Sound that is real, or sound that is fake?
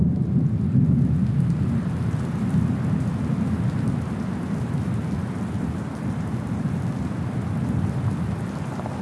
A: real